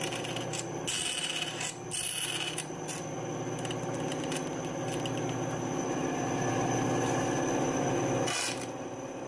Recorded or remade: recorded